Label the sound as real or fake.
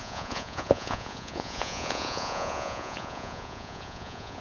fake